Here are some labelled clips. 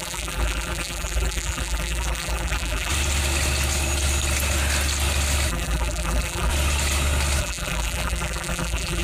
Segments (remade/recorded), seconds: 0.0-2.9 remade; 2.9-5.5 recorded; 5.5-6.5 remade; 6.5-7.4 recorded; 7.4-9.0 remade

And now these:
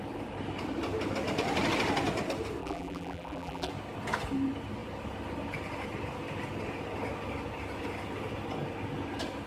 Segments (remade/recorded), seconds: 0.0-2.6 recorded; 2.6-3.7 remade; 3.7-9.5 recorded

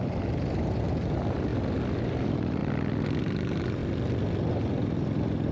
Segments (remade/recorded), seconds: 0.0-1.5 remade; 1.5-2.0 recorded; 2.0-2.6 remade; 2.6-3.2 recorded; 3.2-3.8 remade; 3.8-4.5 recorded; 4.5-5.5 remade

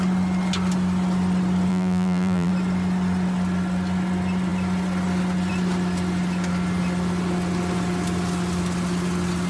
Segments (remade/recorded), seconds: 0.0-1.7 recorded; 1.7-2.5 remade; 2.5-9.5 recorded

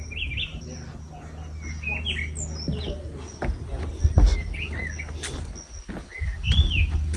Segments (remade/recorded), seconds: 0.0-7.2 recorded

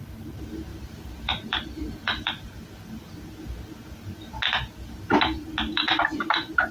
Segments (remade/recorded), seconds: 0.0-0.7 recorded; 0.7-2.5 remade; 2.5-5.7 recorded; 5.7-6.7 remade

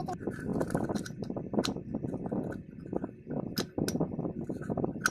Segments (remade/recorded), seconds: 0.0-0.5 recorded; 0.5-2.8 remade; 2.8-5.1 recorded

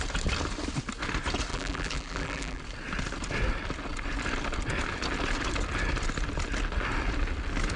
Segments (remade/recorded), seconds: 0.0-1.5 recorded; 1.5-2.6 remade; 2.6-7.8 recorded